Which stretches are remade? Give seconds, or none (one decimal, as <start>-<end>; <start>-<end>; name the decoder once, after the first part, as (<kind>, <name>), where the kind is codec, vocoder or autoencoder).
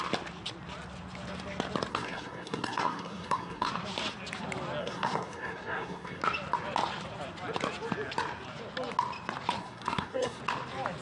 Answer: 1.9-3.7 (codec, SNAC); 4.8-6.2; 9.6-10.4